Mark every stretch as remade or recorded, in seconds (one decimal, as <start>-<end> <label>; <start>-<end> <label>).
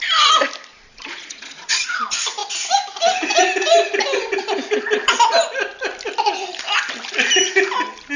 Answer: 0.0-0.7 recorded; 0.7-1.8 remade; 1.8-8.2 recorded